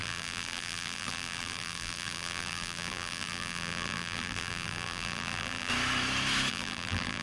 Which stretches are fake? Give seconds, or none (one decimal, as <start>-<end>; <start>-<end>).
0.0-5.7; 6.5-7.2